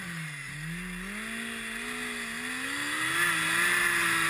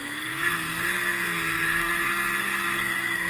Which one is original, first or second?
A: first